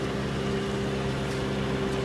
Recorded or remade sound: recorded